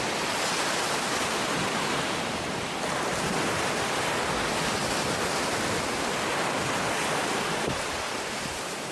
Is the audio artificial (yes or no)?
no